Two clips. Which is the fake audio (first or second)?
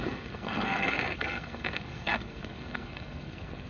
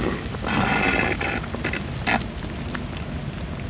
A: first